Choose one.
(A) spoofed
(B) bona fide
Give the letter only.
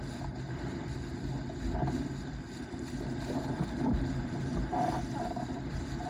B